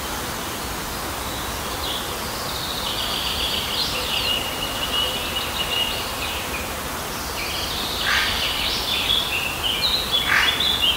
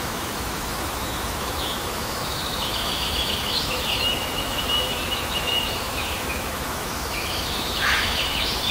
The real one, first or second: first